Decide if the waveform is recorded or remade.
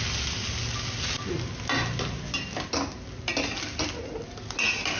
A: recorded